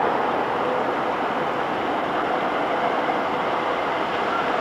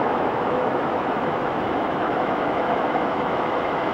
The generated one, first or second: second